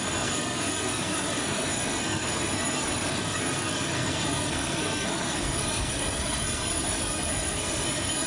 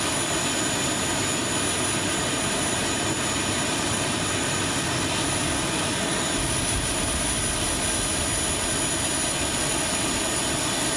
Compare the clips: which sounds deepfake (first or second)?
first